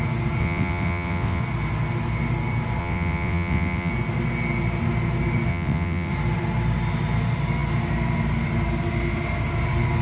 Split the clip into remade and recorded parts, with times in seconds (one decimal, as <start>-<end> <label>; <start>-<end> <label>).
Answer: 0.0-0.4 recorded; 0.4-1.4 remade; 1.4-2.8 recorded; 2.8-3.9 remade; 3.9-5.5 recorded; 5.5-6.1 remade; 6.1-10.0 recorded